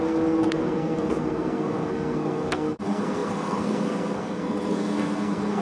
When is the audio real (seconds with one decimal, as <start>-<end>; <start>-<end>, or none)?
none